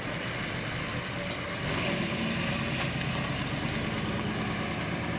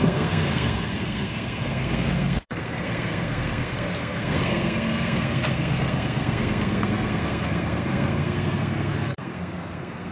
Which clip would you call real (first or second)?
first